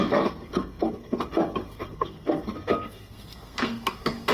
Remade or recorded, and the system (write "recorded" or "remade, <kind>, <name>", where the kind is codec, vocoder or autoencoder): remade, codec, SNAC